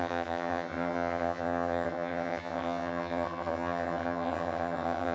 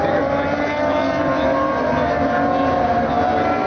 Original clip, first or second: second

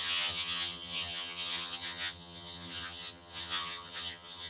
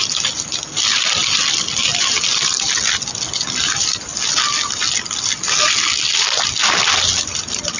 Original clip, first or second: second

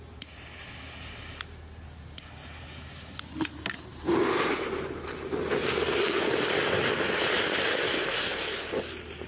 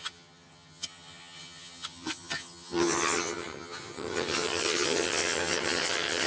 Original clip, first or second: first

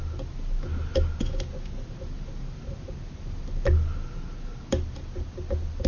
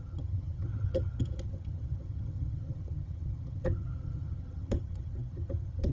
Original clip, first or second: first